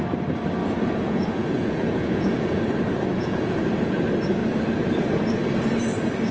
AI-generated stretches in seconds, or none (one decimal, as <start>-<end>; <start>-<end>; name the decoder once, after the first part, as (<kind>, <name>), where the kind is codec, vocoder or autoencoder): 0.6-2.6 (vocoder, Vocos); 3.1-3.6